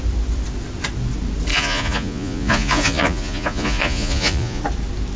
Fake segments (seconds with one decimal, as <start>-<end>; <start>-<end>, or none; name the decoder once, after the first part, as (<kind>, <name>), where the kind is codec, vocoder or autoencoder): 1.5-4.6 (vocoder, Vocos)